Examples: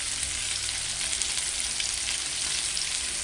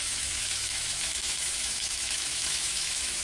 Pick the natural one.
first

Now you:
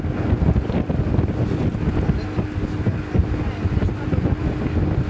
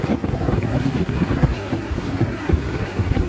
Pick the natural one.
first